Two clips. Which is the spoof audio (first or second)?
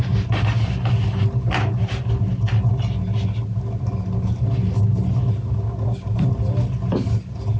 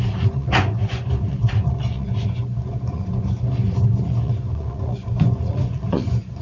second